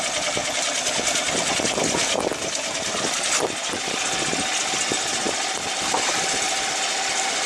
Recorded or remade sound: recorded